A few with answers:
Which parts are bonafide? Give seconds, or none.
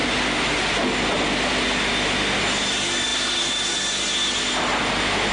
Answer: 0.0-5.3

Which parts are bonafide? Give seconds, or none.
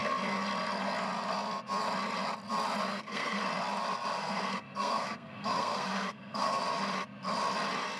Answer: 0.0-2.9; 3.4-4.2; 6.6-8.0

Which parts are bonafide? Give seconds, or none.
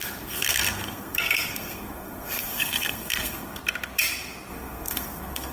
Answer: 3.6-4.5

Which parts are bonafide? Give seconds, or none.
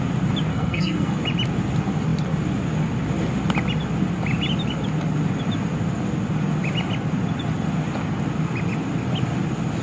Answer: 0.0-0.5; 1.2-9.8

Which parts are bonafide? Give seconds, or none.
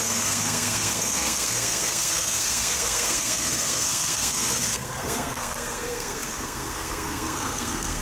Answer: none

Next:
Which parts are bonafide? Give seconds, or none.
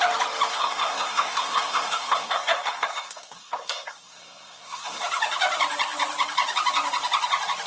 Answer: 0.0-0.5; 5.0-7.7